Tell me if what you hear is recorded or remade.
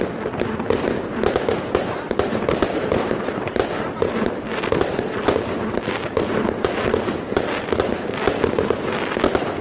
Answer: recorded